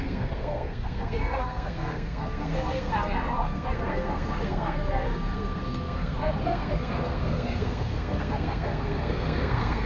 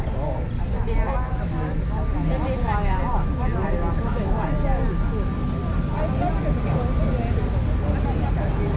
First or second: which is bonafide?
second